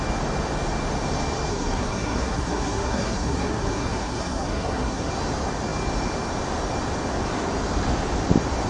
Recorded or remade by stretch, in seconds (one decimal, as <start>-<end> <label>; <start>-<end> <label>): 0.0-1.5 recorded; 1.5-5.1 remade; 5.1-8.7 recorded